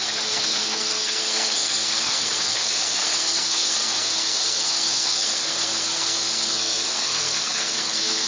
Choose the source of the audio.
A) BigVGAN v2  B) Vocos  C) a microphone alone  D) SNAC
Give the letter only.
D